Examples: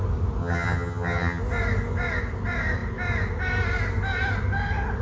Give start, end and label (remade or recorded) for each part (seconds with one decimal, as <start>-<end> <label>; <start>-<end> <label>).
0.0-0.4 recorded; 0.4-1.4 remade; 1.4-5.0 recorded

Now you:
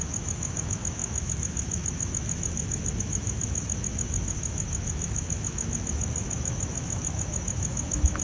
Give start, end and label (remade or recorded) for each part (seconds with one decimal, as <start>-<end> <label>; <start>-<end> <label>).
0.0-8.2 remade

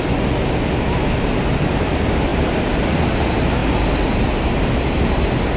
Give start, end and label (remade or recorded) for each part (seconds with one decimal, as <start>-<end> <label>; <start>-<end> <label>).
0.0-5.6 recorded